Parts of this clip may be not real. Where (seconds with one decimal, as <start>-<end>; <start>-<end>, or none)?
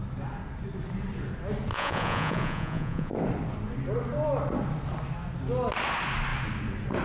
1.7-3.1